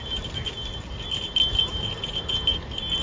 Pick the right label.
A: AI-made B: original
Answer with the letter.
B